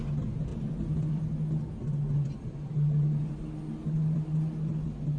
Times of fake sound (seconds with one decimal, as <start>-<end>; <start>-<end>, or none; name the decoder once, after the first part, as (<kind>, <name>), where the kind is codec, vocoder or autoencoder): 0.5-1.2 (vocoder, BigVGAN v2)